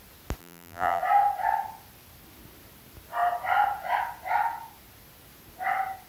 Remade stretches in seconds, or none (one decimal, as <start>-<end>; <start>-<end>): 0.4-1.0